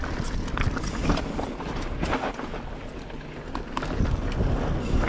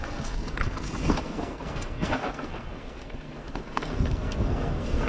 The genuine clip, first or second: first